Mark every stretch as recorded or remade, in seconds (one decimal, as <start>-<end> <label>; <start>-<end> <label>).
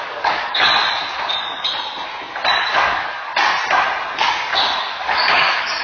0.0-0.7 remade; 0.7-2.6 recorded; 2.6-3.3 remade; 3.3-4.8 recorded; 4.8-5.8 remade